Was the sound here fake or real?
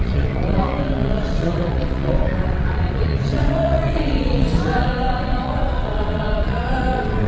fake